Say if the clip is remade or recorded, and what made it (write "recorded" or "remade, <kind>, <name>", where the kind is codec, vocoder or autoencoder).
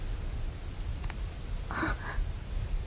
recorded